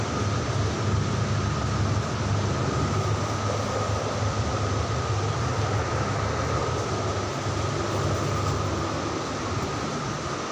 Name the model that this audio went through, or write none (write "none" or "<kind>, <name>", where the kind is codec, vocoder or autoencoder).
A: none